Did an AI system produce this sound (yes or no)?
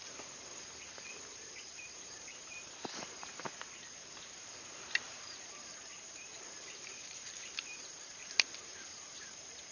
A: yes